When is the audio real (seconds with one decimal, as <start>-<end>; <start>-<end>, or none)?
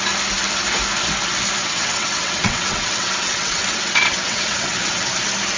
0.0-1.6; 5.0-5.6